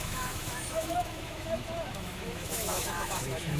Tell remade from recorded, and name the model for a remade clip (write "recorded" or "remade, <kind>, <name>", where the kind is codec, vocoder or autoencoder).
remade, autoencoder, DAC-VAE